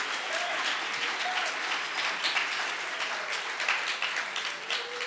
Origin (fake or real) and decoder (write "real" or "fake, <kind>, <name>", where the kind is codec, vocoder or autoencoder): fake, vocoder, BigVGAN v2